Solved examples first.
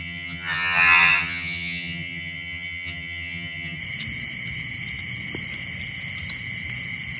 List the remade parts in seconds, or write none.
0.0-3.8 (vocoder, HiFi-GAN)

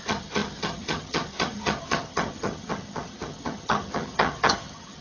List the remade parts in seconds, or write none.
0.0-5.0 (vocoder, HiFi-GAN)

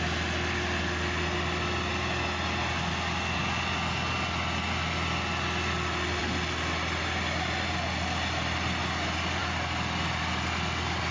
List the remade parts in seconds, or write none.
none

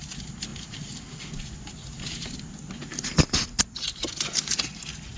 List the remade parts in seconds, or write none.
none

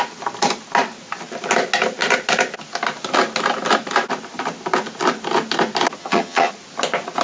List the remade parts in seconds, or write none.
6.0-6.5 (vocoder, HiFi-GAN)